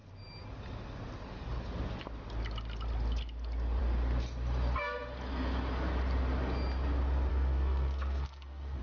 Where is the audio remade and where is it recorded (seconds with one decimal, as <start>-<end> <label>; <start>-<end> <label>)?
0.0-7.3 recorded; 7.3-8.8 remade

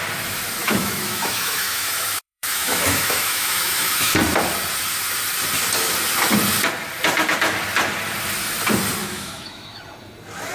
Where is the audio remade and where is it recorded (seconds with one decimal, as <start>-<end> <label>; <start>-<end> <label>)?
0.0-0.6 recorded; 0.6-4.1 remade; 4.1-9.0 recorded; 9.0-9.8 remade; 9.8-10.5 recorded

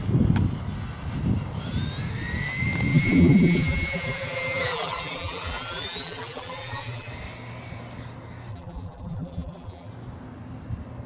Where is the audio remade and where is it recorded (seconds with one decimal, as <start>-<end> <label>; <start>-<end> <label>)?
0.0-2.9 recorded; 2.9-7.1 remade; 7.1-8.5 recorded; 8.5-9.9 remade; 9.9-11.1 recorded

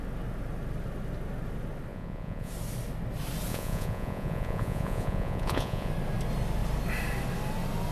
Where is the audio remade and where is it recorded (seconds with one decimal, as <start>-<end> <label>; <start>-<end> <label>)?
0.0-1.9 recorded; 1.9-2.5 remade; 2.5-3.5 recorded; 3.5-5.9 remade; 5.9-7.9 recorded

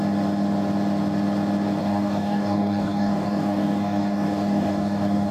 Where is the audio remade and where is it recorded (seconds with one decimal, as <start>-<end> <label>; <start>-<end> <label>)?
0.0-1.8 recorded; 1.8-5.3 remade

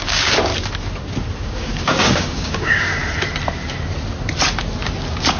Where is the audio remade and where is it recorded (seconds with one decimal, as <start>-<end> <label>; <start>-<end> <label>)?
0.0-0.5 remade; 0.5-1.4 recorded; 1.4-3.0 remade; 3.0-5.4 recorded

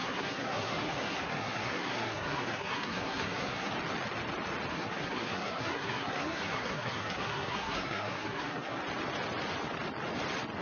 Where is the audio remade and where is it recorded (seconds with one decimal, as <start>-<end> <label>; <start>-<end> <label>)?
0.0-3.7 remade; 3.7-4.7 recorded; 4.7-8.8 remade; 8.8-10.6 recorded